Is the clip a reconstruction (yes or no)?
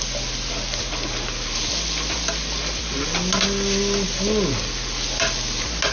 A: no